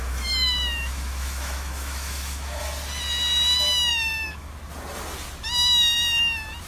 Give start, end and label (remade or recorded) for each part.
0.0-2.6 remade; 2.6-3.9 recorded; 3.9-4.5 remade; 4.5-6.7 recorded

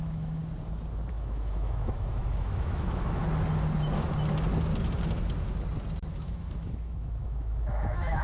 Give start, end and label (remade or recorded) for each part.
0.0-0.4 remade; 0.4-1.1 recorded; 1.1-3.2 remade; 3.2-6.1 recorded; 6.1-8.2 remade

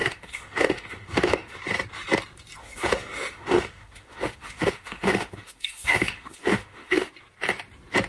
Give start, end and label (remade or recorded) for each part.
0.0-1.6 remade; 1.6-2.6 recorded; 2.6-7.1 remade; 7.1-8.1 recorded

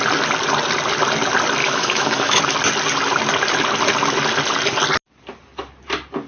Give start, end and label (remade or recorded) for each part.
0.0-1.6 recorded; 1.6-2.4 remade; 2.4-6.3 recorded